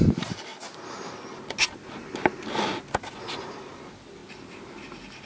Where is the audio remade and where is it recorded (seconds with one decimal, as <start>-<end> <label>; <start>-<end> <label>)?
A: 0.0-5.3 recorded